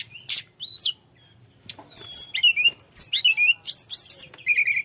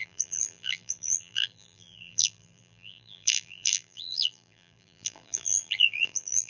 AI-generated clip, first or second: second